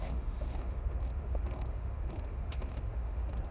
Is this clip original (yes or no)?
no